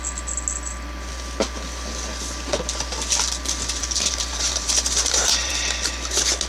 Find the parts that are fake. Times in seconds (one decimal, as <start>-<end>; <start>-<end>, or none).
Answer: 3.8-5.5